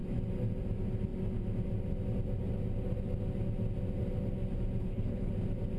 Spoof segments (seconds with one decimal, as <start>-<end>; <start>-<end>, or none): 4.8-5.3